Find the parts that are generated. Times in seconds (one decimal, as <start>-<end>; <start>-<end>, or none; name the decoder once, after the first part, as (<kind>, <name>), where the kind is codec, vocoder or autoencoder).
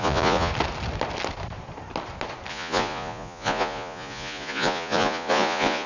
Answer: 0.0-0.5 (vocoder, Vocos); 2.5-5.9